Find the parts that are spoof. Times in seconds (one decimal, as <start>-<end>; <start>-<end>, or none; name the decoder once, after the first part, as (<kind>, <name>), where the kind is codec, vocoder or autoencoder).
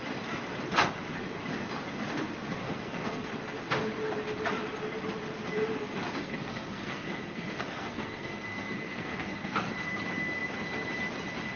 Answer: 2.6-3.3 (codec, SNAC); 6.2-9.7